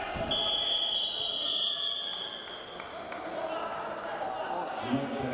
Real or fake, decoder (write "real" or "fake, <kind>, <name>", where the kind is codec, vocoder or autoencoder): real